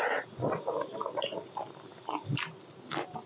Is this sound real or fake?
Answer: real